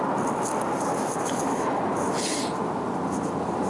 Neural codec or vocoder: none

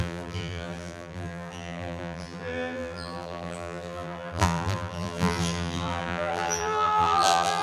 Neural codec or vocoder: vocoder, BigVGAN v2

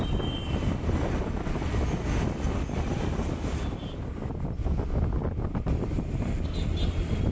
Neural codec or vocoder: none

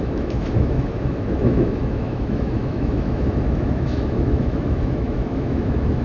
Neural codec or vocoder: autoencoder, DAC-VAE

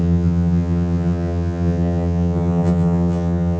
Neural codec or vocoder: vocoder, HiFi-GAN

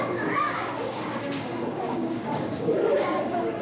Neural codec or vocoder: codec, DAC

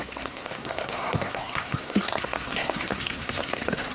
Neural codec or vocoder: codec, SNAC